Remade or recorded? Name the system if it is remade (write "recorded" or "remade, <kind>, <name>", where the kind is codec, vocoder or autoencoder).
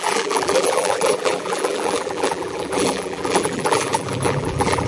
remade, vocoder, BigVGAN v2